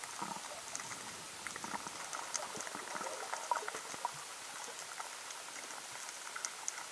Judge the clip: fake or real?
real